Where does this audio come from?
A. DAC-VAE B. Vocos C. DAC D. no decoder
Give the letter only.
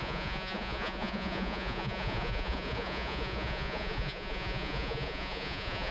B